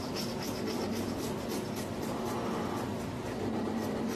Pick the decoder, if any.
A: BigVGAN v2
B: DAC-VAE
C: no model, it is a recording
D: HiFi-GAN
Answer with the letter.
C